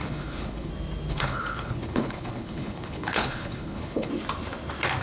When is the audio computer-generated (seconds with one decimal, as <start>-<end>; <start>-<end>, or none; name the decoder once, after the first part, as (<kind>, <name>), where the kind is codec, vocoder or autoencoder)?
0.0-0.7 (codec, HILCodec); 1.1-4.1